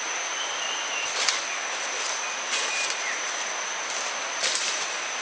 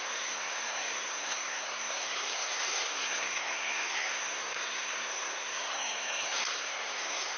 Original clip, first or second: first